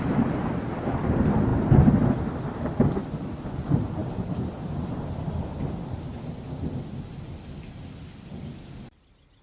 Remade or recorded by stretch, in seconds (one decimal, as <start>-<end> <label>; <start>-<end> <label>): 0.0-9.4 recorded